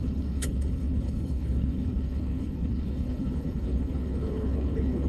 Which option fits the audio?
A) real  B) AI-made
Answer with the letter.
B